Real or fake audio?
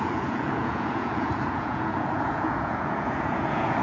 fake